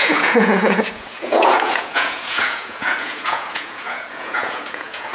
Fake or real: fake